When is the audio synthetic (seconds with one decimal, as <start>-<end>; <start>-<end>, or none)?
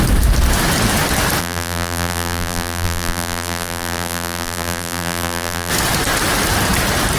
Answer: 1.4-5.7